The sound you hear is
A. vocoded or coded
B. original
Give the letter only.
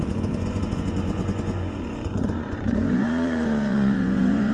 A